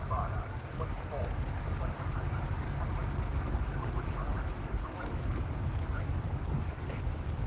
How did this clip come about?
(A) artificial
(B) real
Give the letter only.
A